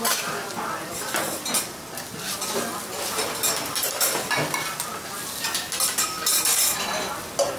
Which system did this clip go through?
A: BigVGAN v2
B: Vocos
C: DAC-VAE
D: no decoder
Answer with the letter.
D